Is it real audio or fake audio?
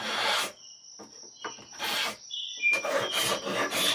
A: fake